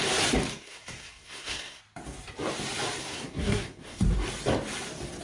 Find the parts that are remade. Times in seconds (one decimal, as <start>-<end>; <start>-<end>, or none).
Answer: 0.5-1.8; 3.0-4.0

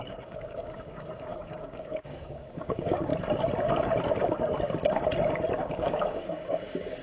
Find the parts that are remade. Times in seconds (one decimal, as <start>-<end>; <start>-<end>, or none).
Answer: 0.0-3.1; 5.6-7.0

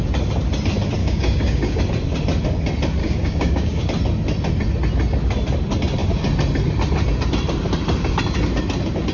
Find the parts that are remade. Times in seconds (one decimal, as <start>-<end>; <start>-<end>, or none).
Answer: 1.0-1.8; 3.0-3.8